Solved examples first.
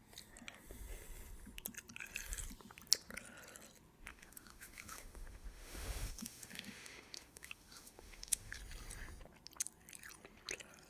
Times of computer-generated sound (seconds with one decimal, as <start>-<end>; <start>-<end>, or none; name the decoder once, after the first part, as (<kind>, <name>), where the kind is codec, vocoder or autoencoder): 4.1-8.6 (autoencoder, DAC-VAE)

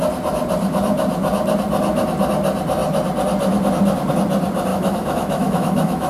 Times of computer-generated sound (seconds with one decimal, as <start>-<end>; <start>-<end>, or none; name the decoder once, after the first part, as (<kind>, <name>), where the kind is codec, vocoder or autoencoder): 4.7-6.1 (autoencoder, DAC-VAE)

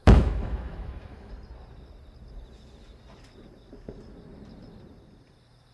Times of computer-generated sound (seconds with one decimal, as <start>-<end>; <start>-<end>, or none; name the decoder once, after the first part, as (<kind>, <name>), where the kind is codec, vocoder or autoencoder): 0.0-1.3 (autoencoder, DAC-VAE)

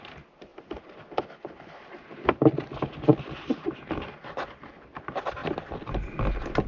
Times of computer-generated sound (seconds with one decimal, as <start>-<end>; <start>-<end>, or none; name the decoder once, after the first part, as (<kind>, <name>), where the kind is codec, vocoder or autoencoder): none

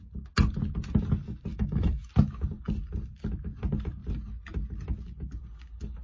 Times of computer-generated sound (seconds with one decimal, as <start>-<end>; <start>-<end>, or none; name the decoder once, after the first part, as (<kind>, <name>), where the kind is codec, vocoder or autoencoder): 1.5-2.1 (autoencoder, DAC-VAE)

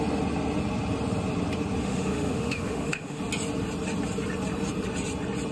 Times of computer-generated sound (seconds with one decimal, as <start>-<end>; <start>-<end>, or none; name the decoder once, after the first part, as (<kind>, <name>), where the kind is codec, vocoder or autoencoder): 1.8-3.2 (autoencoder, DAC-VAE)

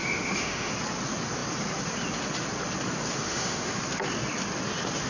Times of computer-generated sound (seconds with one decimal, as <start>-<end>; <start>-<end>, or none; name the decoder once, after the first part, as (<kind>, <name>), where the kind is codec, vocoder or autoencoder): 0.0-0.7 (autoencoder, DAC-VAE); 3.2-3.8